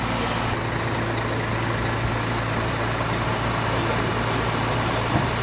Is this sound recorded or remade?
recorded